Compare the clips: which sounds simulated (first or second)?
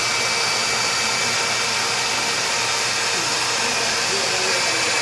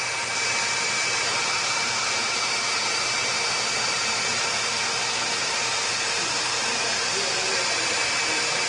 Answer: second